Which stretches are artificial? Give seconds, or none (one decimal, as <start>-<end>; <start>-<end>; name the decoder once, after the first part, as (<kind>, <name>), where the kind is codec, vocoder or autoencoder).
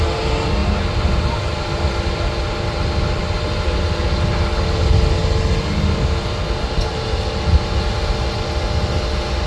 none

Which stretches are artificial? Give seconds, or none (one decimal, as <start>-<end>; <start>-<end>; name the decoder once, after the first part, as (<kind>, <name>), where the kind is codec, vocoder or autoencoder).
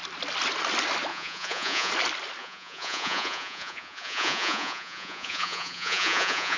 1.1-1.9 (vocoder, Vocos); 2.4-6.6